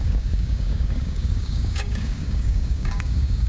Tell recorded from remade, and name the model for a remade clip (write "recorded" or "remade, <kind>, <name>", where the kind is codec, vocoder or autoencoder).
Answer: remade, codec, DAC